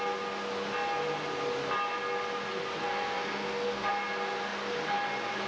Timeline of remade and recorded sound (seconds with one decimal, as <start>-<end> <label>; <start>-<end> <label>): 0.0-2.8 recorded; 2.8-3.9 remade; 3.9-5.5 recorded